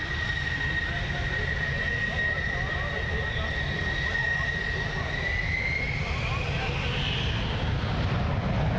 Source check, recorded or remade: recorded